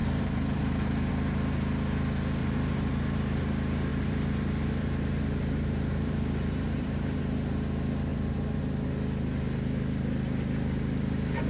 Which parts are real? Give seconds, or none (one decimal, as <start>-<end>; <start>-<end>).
1.1-2.4; 3.4-3.9; 7.2-8.1; 8.6-11.5